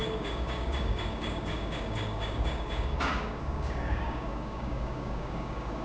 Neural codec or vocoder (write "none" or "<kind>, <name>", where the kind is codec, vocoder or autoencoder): codec, DAC